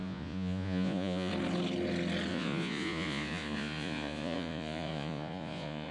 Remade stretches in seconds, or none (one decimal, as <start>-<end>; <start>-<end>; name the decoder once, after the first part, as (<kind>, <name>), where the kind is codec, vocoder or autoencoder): 0.0-1.3 (vocoder, Vocos); 2.3-5.9